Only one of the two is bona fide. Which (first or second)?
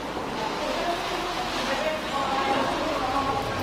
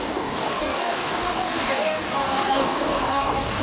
first